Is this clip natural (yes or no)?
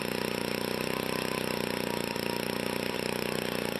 yes